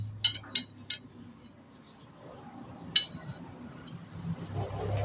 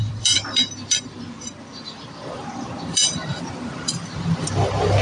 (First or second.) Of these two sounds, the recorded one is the first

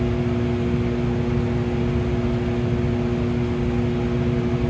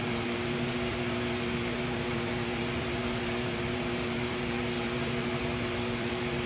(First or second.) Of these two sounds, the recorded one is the first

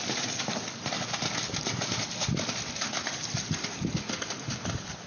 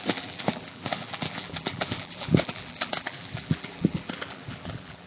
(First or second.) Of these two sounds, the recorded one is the first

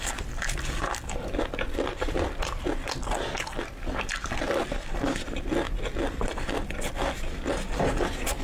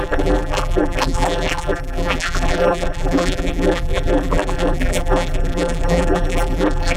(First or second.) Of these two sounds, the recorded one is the first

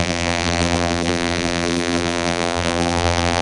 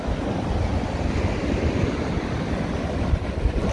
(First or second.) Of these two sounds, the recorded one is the second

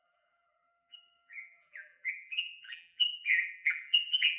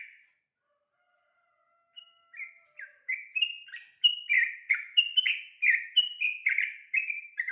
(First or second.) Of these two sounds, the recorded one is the second